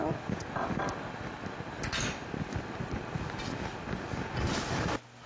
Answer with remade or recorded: recorded